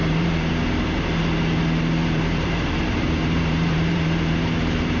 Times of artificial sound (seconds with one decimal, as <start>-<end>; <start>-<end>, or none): 0.0-0.5; 2.0-5.0